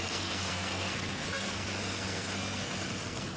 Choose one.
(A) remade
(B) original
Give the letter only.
A